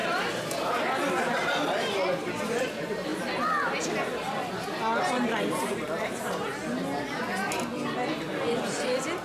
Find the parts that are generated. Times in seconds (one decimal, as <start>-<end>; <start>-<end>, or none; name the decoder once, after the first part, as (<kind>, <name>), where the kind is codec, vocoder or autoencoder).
none